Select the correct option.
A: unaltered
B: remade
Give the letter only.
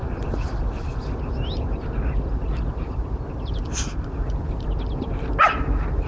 A